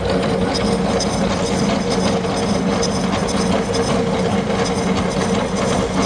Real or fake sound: real